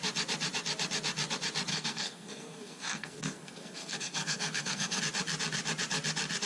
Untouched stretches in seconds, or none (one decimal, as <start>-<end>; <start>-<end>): 0.0-1.7; 5.0-6.5